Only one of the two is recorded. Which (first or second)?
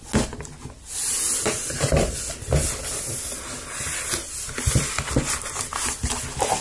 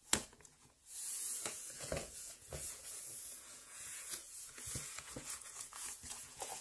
first